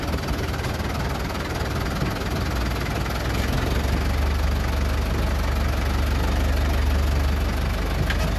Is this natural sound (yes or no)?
yes